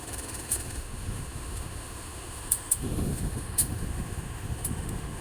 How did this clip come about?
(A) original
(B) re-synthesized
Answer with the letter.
B